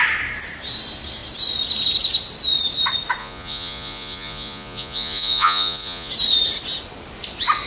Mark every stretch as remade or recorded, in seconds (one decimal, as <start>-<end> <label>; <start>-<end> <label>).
0.0-3.2 recorded; 3.2-6.1 remade; 6.1-7.7 recorded